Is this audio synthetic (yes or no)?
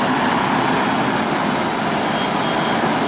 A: no